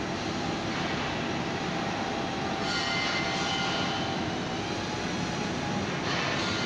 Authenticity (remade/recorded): recorded